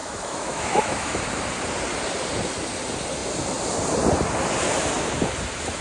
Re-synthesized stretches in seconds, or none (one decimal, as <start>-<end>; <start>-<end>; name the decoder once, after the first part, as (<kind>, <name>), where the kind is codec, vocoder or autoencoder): 0.0-1.2 (autoencoder, DAC-VAE)